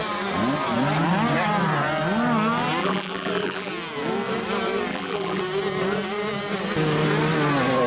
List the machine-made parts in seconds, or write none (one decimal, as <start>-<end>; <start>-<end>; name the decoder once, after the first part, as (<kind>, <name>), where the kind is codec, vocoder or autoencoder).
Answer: 2.8-3.7 (vocoder, BigVGAN v2); 4.9-5.4